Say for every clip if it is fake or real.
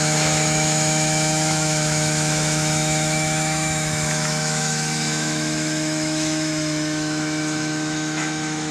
fake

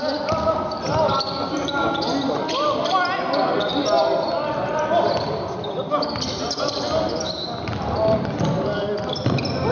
real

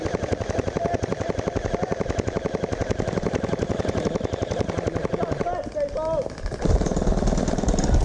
real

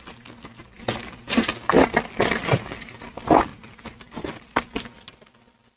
real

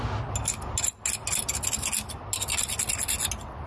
real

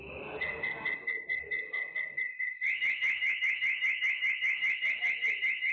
real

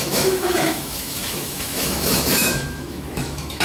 fake